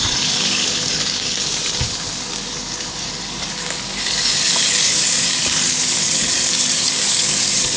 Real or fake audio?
fake